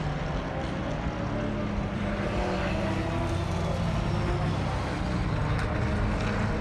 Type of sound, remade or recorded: recorded